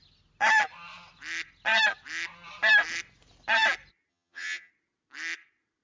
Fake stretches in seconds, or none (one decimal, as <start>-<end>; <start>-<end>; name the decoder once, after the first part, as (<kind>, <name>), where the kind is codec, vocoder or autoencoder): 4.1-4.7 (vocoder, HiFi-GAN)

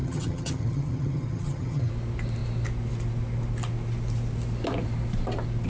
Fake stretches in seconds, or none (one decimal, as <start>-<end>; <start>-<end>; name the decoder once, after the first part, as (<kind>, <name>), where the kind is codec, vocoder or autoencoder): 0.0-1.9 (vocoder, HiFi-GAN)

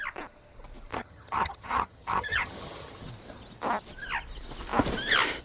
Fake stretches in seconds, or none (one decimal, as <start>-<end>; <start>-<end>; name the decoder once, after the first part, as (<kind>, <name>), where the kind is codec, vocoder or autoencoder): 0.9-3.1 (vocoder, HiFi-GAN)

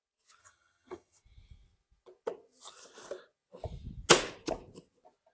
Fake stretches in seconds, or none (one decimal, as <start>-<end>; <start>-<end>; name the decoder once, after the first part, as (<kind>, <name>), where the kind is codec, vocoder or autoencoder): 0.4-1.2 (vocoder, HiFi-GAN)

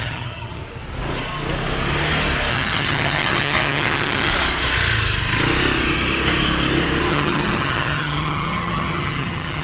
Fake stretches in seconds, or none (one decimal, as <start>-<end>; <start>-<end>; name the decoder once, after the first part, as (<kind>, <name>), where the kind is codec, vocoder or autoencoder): 0.0-0.6 (vocoder, HiFi-GAN); 2.5-4.3; 7.1-9.6